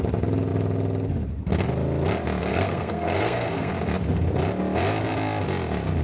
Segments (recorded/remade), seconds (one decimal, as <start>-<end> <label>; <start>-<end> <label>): 0.0-2.5 recorded; 2.5-3.7 remade; 3.7-6.0 recorded